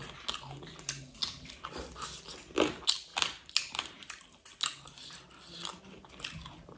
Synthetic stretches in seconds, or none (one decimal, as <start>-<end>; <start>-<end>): none